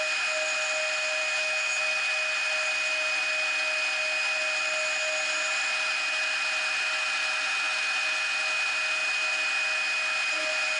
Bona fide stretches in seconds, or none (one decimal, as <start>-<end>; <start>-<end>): 0.0-1.2; 1.8-10.8